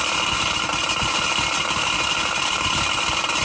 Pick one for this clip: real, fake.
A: real